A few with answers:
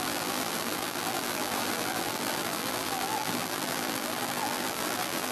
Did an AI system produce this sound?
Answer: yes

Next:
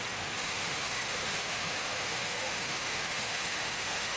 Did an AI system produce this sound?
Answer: yes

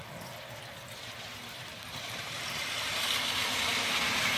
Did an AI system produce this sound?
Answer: no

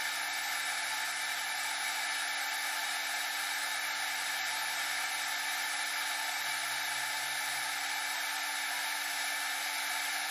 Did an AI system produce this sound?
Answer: no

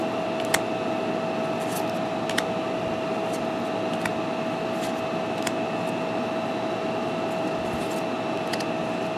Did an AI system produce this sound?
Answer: no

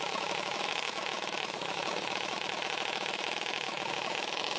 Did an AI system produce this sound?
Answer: yes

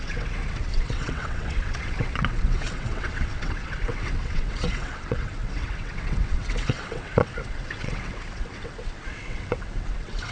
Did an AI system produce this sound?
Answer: yes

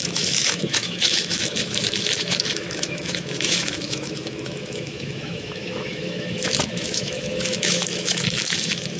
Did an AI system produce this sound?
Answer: yes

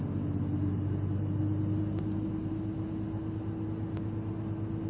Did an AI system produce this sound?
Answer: no